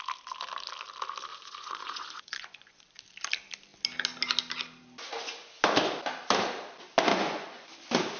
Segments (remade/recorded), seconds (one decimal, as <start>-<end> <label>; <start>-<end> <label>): 0.0-1.3 recorded; 1.3-2.8 remade; 2.8-7.1 recorded; 7.1-7.7 remade; 7.7-8.2 recorded